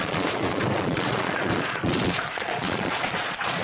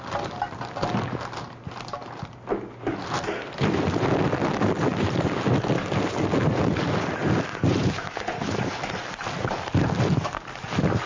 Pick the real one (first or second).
second